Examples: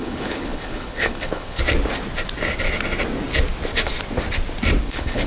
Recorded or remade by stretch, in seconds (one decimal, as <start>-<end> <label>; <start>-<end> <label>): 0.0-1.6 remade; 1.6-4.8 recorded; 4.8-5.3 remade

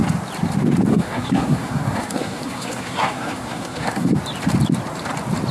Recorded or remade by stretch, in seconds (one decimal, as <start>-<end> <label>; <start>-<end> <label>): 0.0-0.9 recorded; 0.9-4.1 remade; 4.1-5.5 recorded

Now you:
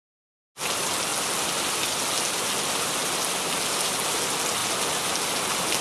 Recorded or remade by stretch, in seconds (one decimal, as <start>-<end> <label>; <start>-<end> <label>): 0.0-5.8 recorded

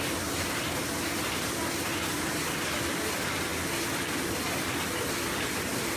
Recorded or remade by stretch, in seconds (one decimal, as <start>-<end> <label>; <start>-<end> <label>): 0.0-6.0 recorded

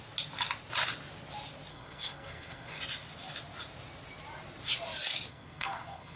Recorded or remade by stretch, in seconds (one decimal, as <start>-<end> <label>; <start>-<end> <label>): 0.0-1.7 recorded; 1.7-2.8 remade; 2.8-5.3 recorded; 5.3-6.2 remade

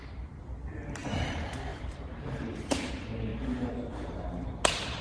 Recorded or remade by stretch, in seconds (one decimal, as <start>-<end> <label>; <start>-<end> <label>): 0.0-1.7 recorded; 1.7-2.9 remade; 2.9-5.0 recorded